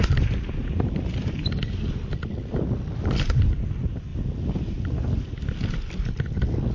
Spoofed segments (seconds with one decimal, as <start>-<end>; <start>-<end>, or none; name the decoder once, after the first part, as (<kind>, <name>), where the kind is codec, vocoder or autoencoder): none